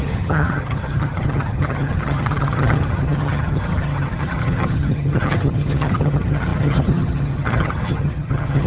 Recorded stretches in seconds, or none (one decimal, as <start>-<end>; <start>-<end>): none